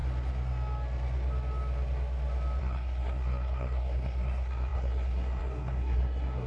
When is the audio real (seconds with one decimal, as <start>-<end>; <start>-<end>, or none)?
0.0-2.6